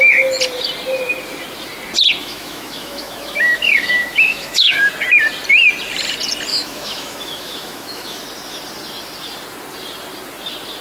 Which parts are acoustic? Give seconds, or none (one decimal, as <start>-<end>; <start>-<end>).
0.0-2.2; 4.9-6.5; 8.2-10.8